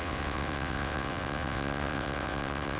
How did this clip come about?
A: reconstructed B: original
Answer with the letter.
A